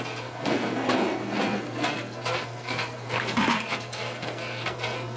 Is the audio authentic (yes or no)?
no